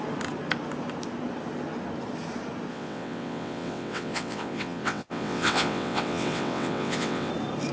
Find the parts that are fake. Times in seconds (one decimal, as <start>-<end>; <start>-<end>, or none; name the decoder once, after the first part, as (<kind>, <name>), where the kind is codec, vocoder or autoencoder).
2.7-7.3 (vocoder, WaveNeXt)